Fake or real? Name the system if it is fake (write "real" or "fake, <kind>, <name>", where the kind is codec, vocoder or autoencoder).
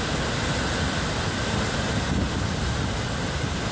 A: real